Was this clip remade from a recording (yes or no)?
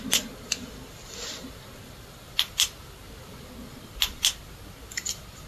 no